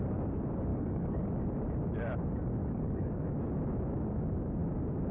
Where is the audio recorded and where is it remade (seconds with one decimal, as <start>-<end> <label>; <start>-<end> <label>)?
0.0-0.7 recorded; 0.7-1.3 remade; 1.3-2.6 recorded; 2.6-3.3 remade; 3.3-5.1 recorded